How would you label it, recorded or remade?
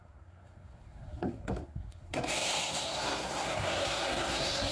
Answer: remade